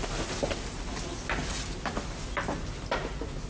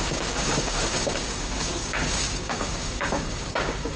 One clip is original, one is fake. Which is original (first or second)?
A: first